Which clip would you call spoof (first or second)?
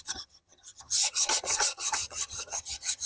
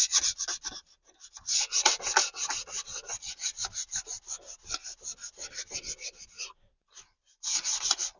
first